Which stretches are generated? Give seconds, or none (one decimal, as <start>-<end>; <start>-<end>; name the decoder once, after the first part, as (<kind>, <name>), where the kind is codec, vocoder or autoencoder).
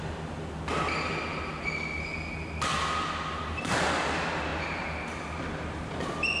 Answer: none